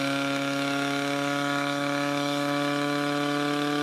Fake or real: fake